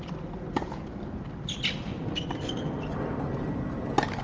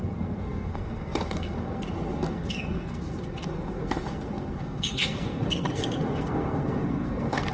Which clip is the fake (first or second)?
second